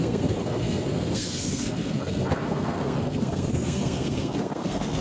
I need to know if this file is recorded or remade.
remade